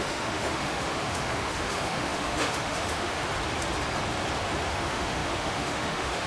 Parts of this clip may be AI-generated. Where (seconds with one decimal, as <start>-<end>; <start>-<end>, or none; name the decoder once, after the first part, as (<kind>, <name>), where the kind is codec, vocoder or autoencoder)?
0.0-3.2 (autoencoder, DAC-VAE); 4.6-6.3